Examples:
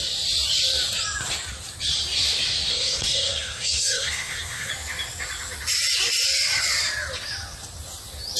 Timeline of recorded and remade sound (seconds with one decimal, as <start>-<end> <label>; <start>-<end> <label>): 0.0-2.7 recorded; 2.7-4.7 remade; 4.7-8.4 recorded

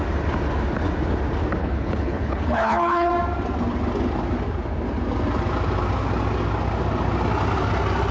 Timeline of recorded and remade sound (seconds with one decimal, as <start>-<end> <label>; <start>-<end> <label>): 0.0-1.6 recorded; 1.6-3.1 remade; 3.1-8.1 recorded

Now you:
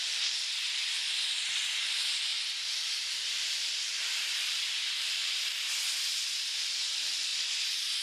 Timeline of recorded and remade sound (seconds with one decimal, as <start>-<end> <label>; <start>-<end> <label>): 0.0-2.3 recorded; 2.3-5.6 remade; 5.6-8.0 recorded

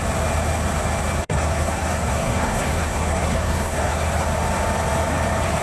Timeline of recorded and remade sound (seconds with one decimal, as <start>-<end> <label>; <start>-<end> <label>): 0.0-1.2 recorded; 1.2-4.1 remade; 4.1-5.6 recorded

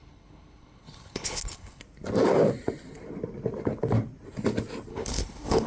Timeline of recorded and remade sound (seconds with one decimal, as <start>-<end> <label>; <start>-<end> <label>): 0.0-1.8 remade; 1.8-4.9 recorded; 4.9-5.7 remade

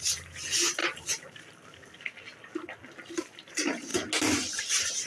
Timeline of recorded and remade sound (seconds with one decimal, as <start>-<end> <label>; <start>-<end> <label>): 0.0-0.8 remade; 0.8-3.5 recorded; 3.5-3.9 remade; 3.9-4.6 recorded; 4.6-5.1 remade